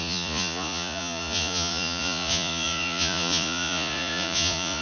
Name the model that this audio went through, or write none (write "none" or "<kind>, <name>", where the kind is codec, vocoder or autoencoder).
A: vocoder, Vocos